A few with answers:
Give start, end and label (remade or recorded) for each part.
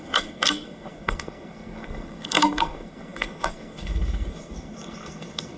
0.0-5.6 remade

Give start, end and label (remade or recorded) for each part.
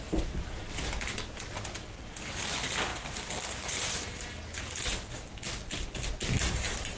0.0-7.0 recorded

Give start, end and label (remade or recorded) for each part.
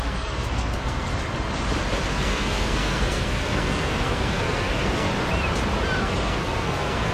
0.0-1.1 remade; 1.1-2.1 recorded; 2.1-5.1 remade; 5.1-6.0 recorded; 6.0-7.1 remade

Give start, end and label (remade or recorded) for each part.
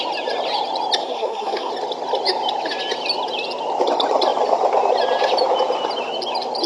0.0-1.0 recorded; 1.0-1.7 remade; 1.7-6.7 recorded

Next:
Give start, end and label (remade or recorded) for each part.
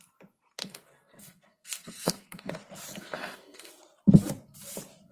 0.0-0.6 recorded; 0.6-2.5 remade; 2.5-2.9 recorded; 2.9-3.7 remade; 3.7-5.1 recorded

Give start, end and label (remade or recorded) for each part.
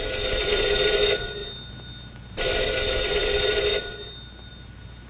0.0-5.1 recorded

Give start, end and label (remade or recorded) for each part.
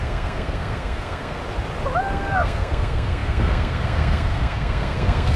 0.0-1.4 remade; 1.4-2.0 recorded; 2.0-5.4 remade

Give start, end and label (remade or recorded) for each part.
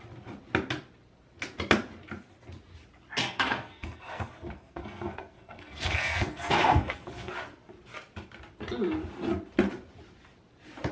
0.0-3.2 recorded; 3.2-7.3 remade; 7.3-10.9 recorded